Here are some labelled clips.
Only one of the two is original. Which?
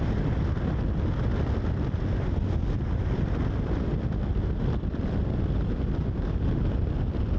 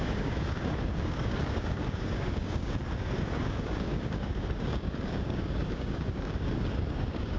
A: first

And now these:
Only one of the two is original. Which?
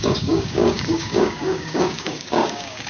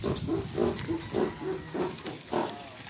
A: second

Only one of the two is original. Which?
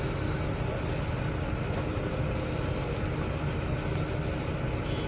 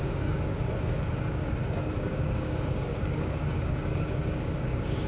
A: first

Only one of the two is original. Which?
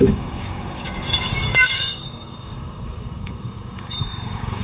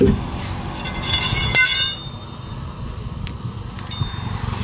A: second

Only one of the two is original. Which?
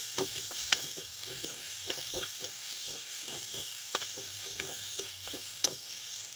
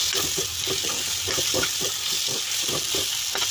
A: second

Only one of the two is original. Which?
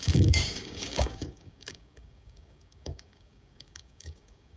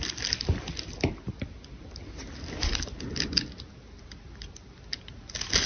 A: second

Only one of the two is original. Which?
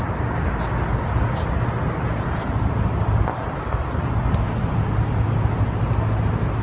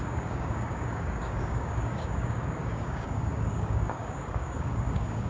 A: first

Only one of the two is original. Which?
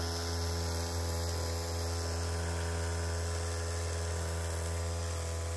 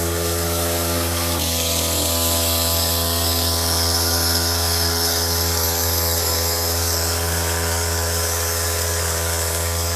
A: first